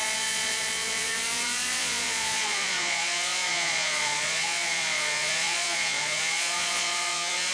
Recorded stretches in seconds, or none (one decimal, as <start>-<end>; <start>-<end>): none